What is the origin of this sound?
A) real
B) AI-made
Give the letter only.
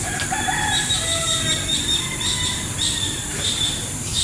B